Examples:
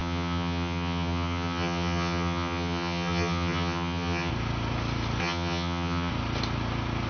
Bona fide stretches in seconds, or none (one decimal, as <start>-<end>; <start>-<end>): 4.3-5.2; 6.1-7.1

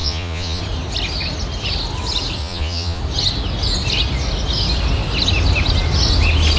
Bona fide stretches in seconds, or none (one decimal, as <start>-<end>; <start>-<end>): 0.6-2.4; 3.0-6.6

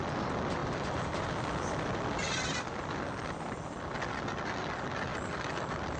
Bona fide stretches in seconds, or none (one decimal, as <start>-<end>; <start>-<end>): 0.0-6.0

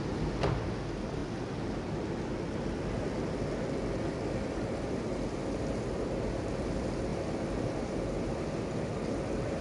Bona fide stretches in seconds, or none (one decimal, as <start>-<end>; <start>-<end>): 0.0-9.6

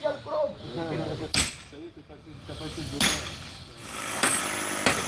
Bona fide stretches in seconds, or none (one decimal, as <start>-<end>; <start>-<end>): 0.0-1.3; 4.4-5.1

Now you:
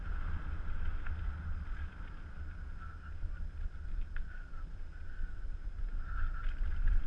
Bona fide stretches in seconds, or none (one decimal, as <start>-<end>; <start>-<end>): 0.0-7.1

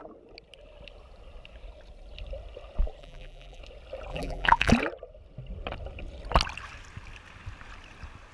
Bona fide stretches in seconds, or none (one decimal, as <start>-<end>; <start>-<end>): 0.0-3.0; 3.6-4.1; 4.7-8.3